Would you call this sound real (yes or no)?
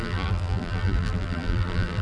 no